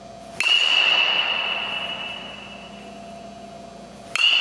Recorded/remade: recorded